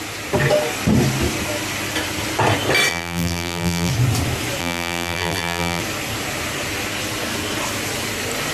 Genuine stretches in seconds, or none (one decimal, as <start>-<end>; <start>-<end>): 0.0-2.9; 3.9-4.6; 5.8-8.5